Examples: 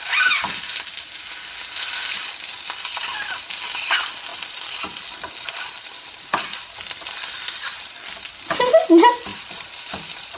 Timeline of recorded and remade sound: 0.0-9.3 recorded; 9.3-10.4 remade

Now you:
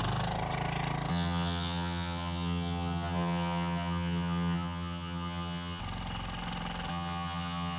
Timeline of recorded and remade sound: 0.0-1.1 recorded; 1.1-5.8 remade; 5.8-6.9 recorded; 6.9-7.8 remade